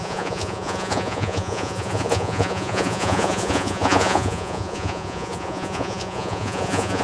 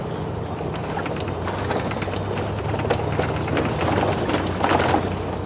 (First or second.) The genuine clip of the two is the second